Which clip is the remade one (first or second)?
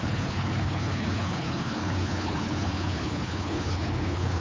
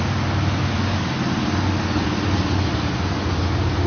first